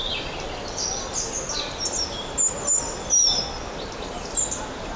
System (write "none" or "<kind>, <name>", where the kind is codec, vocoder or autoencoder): none